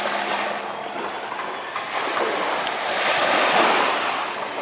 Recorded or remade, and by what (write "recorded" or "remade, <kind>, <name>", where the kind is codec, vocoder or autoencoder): recorded